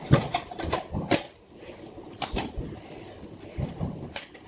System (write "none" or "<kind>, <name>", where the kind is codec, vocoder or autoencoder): none